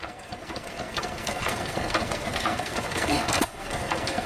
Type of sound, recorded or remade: remade